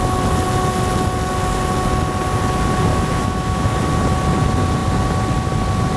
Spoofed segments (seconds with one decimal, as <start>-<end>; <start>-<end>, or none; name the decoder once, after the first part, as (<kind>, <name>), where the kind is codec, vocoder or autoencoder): 2.9-3.8 (autoencoder, DAC-VAE)